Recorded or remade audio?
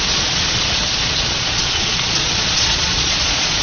remade